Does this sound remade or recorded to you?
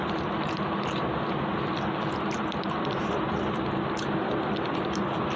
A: recorded